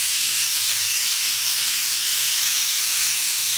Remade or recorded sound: remade